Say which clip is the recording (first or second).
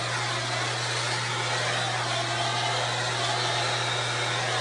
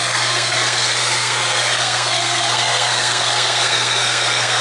first